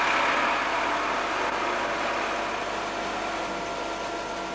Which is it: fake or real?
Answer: real